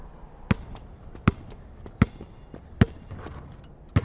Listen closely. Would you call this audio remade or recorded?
recorded